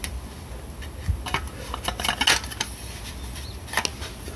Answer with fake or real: real